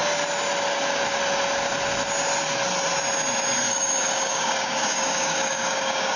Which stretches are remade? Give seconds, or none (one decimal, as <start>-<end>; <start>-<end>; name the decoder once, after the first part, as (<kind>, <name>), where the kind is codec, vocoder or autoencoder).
3.7-6.2 (codec, DAC)